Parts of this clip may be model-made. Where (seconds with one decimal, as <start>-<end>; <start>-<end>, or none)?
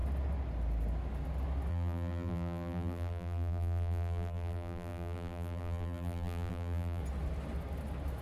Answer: 1.7-7.0